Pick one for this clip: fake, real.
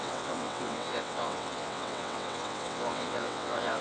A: fake